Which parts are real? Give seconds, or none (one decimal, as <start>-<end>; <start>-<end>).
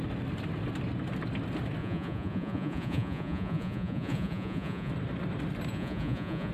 0.0-1.8; 4.9-5.7